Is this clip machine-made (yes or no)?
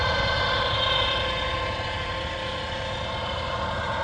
no